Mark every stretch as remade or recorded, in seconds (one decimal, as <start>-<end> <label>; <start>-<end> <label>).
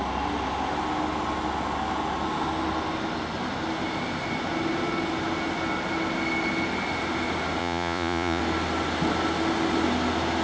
0.0-7.6 recorded; 7.6-8.4 remade; 8.4-10.4 recorded